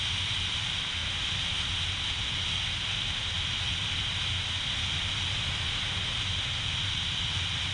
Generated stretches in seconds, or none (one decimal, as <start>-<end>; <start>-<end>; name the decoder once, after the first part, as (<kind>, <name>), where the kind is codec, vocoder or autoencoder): none